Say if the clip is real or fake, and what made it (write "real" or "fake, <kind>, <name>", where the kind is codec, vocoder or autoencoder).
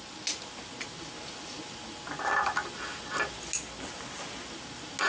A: real